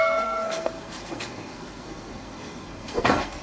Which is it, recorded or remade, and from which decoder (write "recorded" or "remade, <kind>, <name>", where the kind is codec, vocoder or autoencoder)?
remade, codec, SNAC